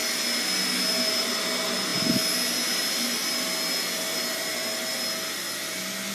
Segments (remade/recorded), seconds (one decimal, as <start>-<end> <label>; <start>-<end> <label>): 0.0-6.1 recorded